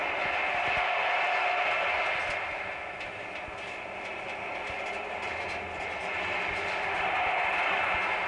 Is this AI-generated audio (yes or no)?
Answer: no